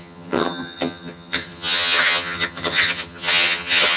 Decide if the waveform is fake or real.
fake